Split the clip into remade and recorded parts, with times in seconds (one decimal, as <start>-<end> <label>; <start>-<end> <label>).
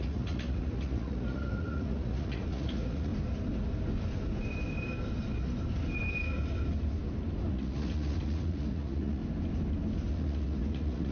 0.0-3.1 remade; 3.1-7.5 recorded; 7.5-9.2 remade; 9.2-10.1 recorded; 10.1-11.1 remade